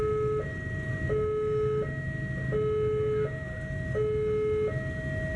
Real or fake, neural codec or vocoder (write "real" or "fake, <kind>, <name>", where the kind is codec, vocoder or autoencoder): real